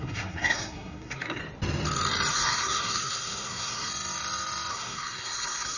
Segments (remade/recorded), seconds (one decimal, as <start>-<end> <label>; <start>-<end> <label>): 0.0-1.4 remade; 1.4-2.3 recorded; 2.3-3.9 remade; 3.9-4.7 recorded; 4.7-5.8 remade